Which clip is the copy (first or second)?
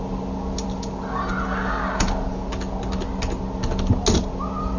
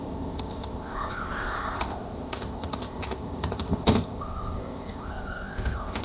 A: second